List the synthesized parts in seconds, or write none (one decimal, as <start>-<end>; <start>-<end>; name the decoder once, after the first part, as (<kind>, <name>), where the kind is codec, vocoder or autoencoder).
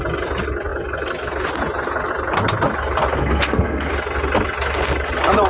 3.2-3.9 (codec, SNAC)